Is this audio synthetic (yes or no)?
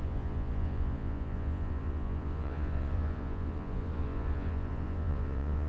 yes